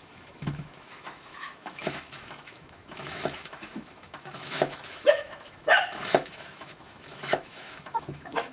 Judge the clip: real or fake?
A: fake